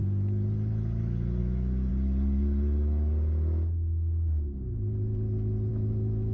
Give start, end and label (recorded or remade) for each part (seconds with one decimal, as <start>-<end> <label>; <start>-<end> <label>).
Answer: 0.0-1.4 recorded; 1.4-1.9 remade; 1.9-5.7 recorded; 5.7-6.3 remade